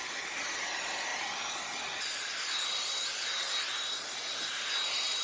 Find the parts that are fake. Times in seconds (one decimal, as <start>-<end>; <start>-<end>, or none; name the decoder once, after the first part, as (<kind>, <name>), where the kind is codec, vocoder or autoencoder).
none